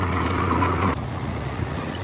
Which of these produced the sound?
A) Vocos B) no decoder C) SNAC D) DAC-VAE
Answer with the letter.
A